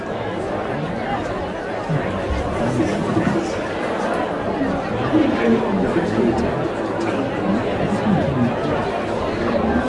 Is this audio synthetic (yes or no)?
no